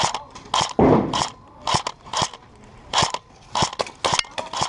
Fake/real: real